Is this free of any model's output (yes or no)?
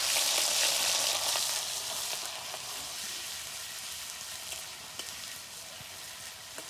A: yes